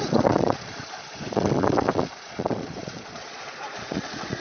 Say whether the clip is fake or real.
fake